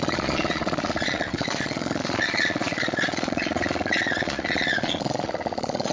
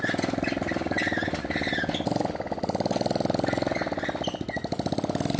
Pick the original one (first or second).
second